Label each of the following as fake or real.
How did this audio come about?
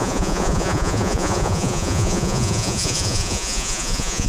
fake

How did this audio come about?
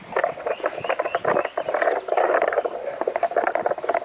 real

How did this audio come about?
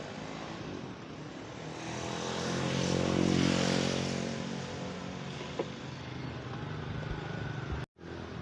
real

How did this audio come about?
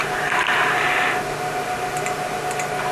real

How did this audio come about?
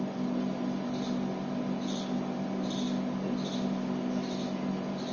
real